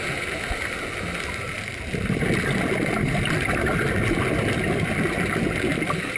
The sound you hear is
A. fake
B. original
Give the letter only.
B